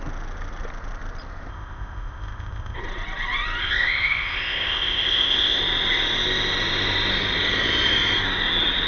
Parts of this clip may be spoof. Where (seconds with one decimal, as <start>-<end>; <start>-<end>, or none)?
1.5-2.8; 3.6-5.6